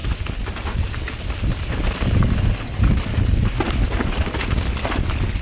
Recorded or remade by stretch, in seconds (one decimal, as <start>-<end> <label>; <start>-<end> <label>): 0.0-5.4 recorded